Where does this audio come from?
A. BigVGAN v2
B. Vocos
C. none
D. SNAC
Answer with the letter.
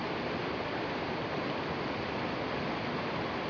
C